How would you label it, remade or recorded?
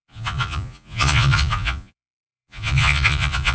remade